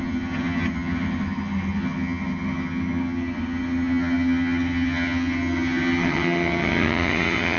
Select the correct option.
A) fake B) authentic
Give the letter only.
A